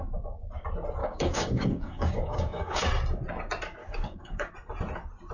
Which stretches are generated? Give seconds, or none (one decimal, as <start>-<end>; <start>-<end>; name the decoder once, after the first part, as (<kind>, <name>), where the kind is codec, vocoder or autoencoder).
1.0-2.9 (codec, DAC); 3.8-4.5